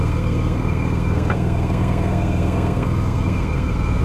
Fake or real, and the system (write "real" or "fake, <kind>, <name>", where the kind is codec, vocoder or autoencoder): fake, codec, SNAC